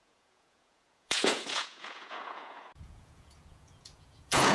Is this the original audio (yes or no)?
no